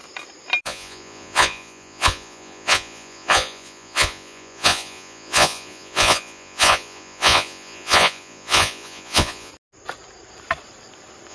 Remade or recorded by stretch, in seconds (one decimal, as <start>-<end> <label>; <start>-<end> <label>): 0.0-0.6 recorded; 0.6-9.5 remade; 9.5-11.3 recorded

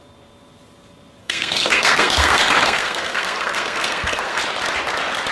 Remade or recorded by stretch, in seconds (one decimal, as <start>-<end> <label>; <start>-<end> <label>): 0.0-1.2 recorded; 1.2-4.4 remade; 4.4-5.3 recorded

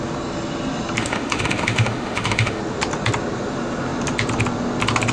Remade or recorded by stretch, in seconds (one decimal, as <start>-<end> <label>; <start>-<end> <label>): 0.0-1.0 recorded; 1.0-2.6 remade; 2.6-5.1 recorded

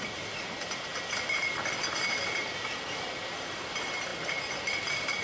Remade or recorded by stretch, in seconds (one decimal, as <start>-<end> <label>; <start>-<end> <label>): 0.0-4.1 recorded; 4.1-5.2 remade

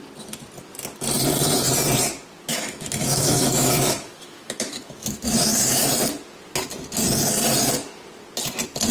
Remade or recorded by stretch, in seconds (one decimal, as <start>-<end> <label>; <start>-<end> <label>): 0.0-2.5 recorded; 2.5-5.9 remade; 5.9-8.9 recorded

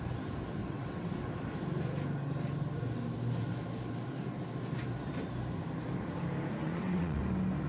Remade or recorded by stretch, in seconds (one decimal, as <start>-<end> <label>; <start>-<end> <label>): 0.0-0.6 recorded; 0.6-1.3 remade; 1.3-6.6 recorded; 6.6-7.2 remade; 7.2-7.7 recorded

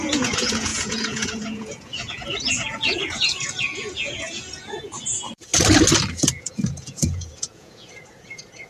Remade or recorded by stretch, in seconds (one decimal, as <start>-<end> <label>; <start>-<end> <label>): 0.0-5.5 remade; 5.5-6.1 recorded; 6.1-8.7 remade